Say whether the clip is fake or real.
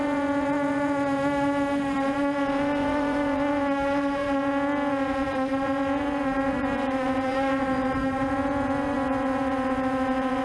fake